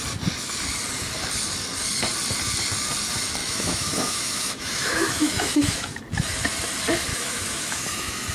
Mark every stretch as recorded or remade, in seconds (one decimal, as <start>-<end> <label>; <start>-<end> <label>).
0.0-3.4 recorded; 3.4-6.0 remade; 6.0-7.1 recorded; 7.1-8.3 remade